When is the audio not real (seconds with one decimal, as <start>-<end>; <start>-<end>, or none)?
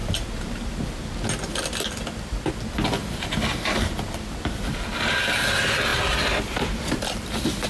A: 0.0-1.0; 3.0-5.2; 5.9-7.7